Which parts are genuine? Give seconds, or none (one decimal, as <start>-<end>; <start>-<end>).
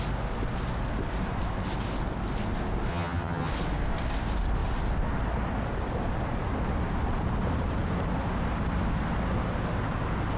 0.0-2.9; 3.5-10.4